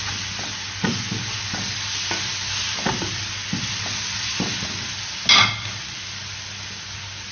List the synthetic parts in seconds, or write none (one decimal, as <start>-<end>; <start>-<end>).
none